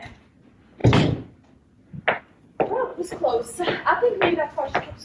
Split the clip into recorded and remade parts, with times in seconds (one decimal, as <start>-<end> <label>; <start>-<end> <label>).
0.0-2.9 recorded; 2.9-4.3 remade; 4.3-5.0 recorded